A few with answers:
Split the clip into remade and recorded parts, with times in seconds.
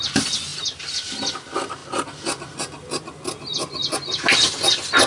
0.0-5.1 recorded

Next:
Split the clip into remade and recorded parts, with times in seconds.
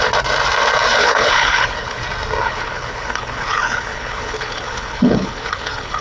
0.0-1.0 recorded; 1.0-2.0 remade; 2.0-2.4 recorded; 2.4-6.0 remade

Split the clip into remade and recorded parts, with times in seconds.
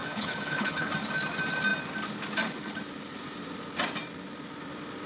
0.0-0.9 remade; 0.9-5.1 recorded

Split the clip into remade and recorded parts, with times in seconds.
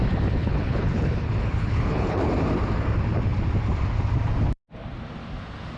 0.0-0.4 recorded; 0.4-2.3 remade; 2.3-5.8 recorded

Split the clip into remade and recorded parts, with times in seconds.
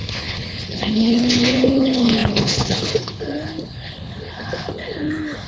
0.0-5.5 remade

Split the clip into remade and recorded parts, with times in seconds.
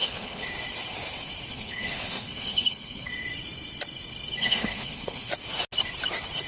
0.0-0.5 remade; 0.5-1.5 recorded; 1.5-3.1 remade; 3.1-4.4 recorded; 4.4-5.3 remade; 5.3-6.5 recorded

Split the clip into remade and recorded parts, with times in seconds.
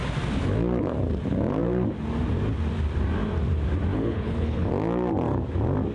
0.0-3.9 recorded; 3.9-4.7 remade; 4.7-5.9 recorded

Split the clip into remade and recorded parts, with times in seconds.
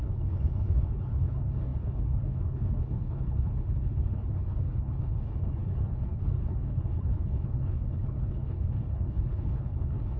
0.0-10.2 remade